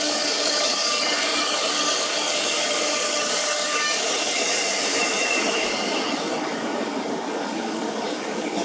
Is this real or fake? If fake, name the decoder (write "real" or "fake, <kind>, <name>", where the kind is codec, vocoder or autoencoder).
fake, codec, DAC